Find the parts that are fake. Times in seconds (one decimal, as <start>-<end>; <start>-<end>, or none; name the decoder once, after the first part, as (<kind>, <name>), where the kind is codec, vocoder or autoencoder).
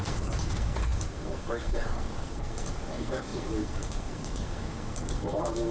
0.0-5.7 (codec, SNAC)